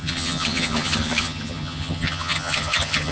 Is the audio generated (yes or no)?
yes